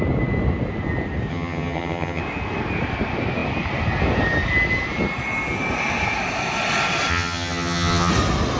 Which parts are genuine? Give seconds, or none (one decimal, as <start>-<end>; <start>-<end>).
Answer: 0.0-1.3; 2.2-7.1; 8.1-8.6